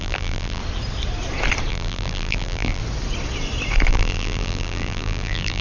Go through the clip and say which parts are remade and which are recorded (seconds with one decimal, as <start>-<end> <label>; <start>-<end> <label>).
0.0-0.6 remade; 0.6-1.7 recorded; 1.7-2.8 remade; 2.8-3.9 recorded; 3.9-5.6 remade